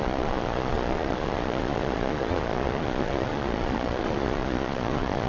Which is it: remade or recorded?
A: remade